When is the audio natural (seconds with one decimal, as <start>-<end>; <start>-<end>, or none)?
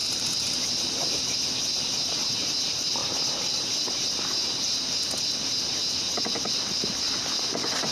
1.2-3.0; 4.1-7.9